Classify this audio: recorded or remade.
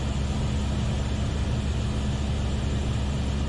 recorded